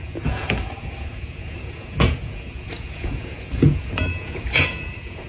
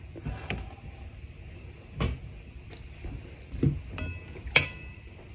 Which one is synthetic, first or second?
first